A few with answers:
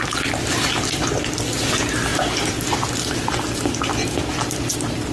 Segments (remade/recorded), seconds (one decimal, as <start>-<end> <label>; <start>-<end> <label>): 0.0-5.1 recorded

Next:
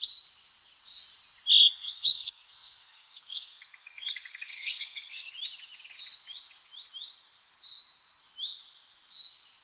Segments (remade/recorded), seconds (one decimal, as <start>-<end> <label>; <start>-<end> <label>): 0.0-1.6 recorded; 1.6-5.3 remade; 5.3-9.6 recorded

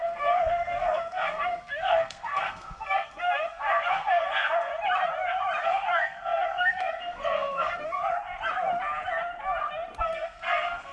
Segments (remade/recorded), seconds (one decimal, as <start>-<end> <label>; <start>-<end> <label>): 0.0-4.7 remade; 4.7-5.6 recorded; 5.6-8.0 remade; 8.0-10.0 recorded; 10.0-10.9 remade

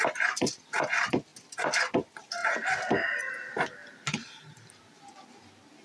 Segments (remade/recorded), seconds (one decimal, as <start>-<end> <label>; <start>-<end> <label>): 0.0-5.8 recorded

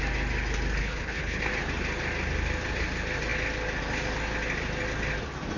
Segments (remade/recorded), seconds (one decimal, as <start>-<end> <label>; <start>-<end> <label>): 0.0-0.8 recorded; 0.8-1.4 remade; 1.4-5.6 recorded